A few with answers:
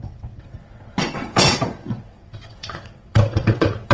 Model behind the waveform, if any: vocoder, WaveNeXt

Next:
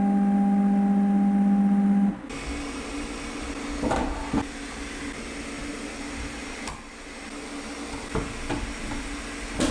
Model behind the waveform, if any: none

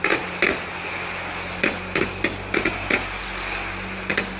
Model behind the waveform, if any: none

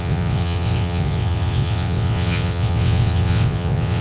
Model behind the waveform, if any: vocoder, WaveNeXt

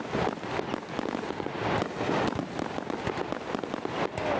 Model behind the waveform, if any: none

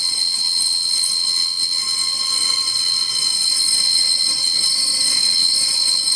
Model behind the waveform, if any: vocoder, WaveNeXt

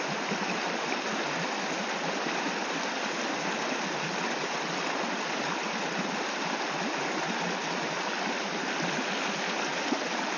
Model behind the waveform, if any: none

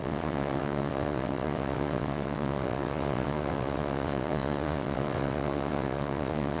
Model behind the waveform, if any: vocoder, WaveNeXt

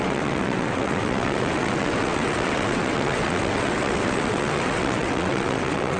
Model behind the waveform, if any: vocoder, WaveNeXt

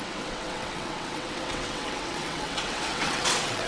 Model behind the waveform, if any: vocoder, WaveNeXt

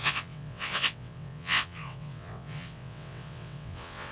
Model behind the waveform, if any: vocoder, WaveNeXt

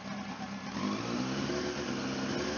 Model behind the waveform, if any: none